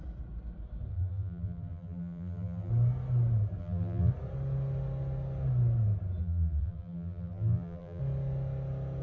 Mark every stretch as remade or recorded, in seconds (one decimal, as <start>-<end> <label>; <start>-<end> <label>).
0.0-0.9 recorded; 0.9-2.7 remade; 2.7-3.6 recorded; 3.6-4.1 remade; 4.1-6.2 recorded; 6.2-8.0 remade; 8.0-9.0 recorded